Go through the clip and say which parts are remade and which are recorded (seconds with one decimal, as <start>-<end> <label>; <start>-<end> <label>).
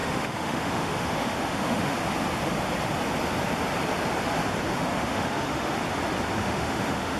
0.0-2.0 remade; 2.0-4.7 recorded; 4.7-5.8 remade; 5.8-6.4 recorded; 6.4-7.2 remade